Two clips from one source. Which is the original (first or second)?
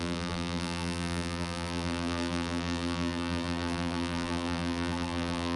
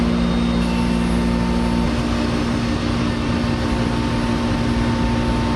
second